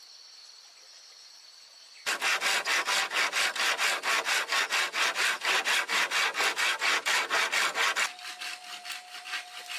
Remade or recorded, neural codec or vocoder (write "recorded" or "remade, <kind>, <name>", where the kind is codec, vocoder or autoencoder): recorded